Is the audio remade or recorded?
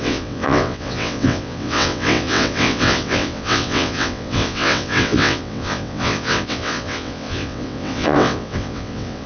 remade